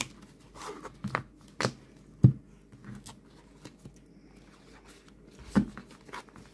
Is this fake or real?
real